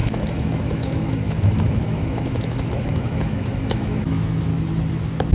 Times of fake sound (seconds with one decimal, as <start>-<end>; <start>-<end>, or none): 0.0-4.5